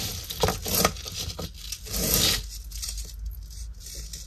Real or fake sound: real